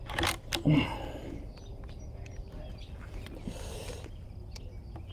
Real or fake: real